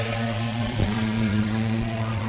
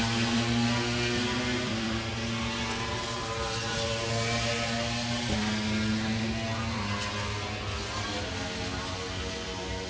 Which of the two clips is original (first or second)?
second